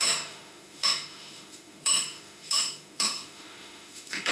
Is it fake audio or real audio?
fake